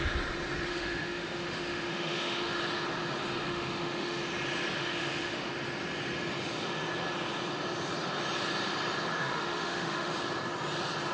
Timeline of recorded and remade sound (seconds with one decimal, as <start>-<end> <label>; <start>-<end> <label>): 0.0-0.7 recorded; 0.7-2.6 remade; 2.6-3.5 recorded; 3.5-4.2 remade; 4.2-4.8 recorded; 4.8-5.5 remade; 5.5-9.2 recorded; 9.2-10.1 remade; 10.1-11.1 recorded